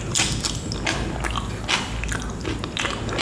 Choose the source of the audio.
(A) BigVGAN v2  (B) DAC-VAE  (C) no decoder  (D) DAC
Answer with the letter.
C